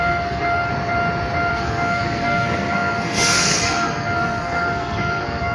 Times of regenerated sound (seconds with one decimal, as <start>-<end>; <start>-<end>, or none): 0.0-0.7; 1.5-5.5